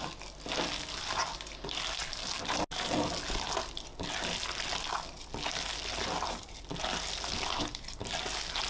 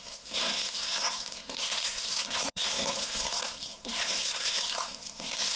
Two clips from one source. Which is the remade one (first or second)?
second